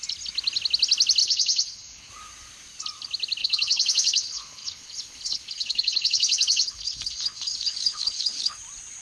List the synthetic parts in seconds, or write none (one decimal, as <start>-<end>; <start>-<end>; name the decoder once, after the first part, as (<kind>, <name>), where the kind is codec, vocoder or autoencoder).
1.2-2.1 (codec, HILCodec); 3.4-8.6